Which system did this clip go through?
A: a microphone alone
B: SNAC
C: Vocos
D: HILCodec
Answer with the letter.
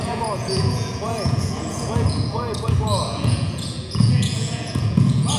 C